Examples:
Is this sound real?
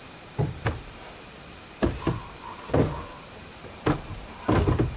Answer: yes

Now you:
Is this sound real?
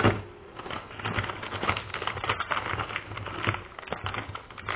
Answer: yes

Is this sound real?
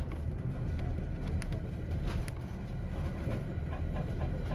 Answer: yes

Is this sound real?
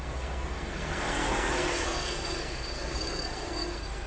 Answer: no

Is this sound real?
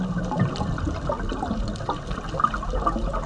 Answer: yes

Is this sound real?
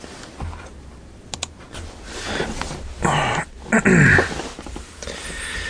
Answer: yes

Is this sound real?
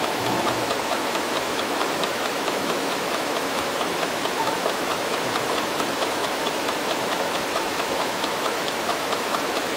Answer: no